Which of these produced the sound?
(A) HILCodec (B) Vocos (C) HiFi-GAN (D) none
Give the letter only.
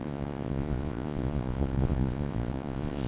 B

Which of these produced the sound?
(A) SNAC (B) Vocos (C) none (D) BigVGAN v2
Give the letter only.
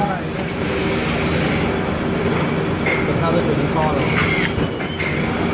C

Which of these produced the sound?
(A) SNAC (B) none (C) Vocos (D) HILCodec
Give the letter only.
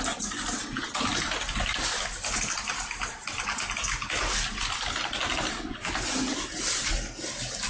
B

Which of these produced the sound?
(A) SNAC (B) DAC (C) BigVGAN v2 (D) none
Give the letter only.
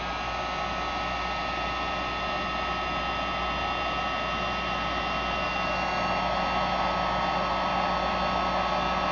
D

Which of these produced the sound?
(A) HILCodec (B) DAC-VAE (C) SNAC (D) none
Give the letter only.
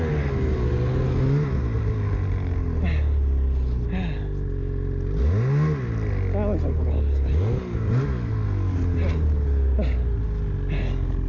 D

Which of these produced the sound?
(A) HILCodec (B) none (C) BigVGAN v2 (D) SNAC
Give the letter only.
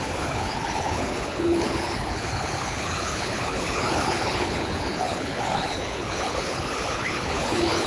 A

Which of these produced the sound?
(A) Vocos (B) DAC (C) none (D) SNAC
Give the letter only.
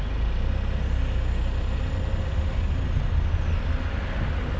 C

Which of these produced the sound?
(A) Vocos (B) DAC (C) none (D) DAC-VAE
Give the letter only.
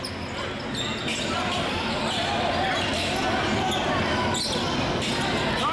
C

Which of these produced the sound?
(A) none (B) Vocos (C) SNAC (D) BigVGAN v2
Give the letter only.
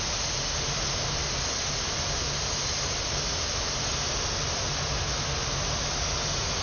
A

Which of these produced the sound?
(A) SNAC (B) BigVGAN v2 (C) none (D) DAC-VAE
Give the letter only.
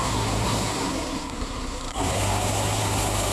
A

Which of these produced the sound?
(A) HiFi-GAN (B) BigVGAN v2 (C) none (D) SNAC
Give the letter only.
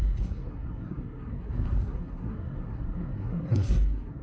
D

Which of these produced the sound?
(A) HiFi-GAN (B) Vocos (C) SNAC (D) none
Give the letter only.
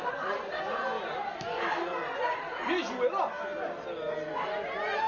D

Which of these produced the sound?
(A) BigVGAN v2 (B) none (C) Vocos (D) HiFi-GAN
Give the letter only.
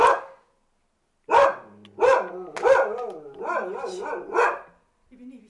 B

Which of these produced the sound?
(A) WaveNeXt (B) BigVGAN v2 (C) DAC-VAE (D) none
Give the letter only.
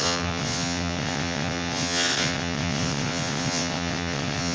A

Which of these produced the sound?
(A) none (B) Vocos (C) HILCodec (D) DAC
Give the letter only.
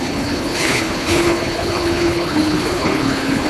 C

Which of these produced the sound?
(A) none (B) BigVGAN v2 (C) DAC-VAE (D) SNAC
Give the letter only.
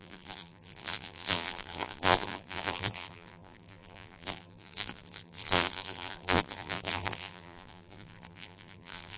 B